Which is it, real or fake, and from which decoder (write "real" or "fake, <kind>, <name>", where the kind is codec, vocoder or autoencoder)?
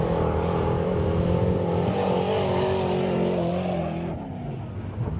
real